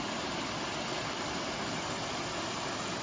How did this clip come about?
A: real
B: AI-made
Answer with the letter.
A